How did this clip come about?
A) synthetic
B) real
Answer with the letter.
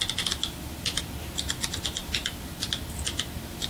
B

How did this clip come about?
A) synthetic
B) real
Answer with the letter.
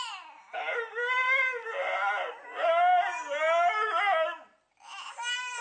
B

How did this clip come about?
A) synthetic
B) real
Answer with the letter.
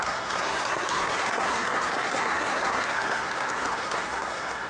A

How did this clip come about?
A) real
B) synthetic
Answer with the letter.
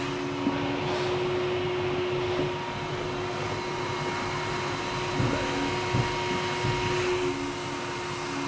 A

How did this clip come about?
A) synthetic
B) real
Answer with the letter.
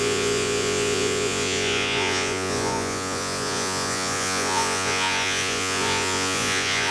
A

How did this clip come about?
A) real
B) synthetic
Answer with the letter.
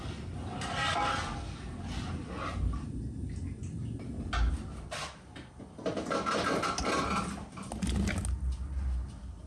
A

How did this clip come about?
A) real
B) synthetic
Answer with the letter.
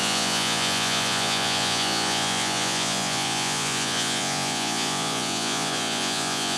B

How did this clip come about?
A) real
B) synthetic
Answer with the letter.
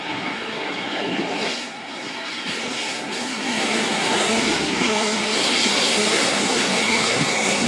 B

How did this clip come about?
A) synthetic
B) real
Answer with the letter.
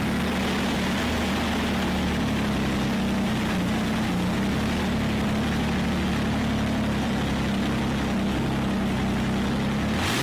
B